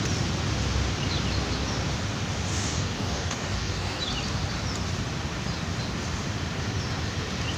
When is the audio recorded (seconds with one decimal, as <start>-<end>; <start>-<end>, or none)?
0.0-2.5; 4.0-7.6

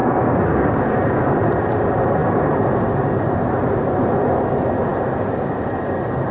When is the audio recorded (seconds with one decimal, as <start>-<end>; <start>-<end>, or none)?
1.2-6.3

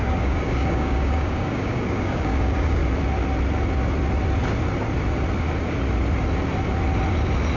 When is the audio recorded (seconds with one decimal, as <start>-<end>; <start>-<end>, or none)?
2.8-7.6